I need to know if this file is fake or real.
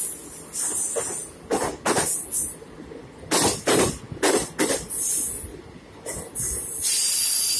real